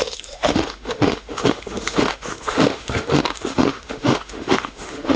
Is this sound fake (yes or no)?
yes